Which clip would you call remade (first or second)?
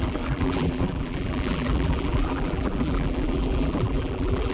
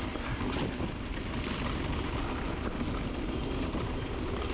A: first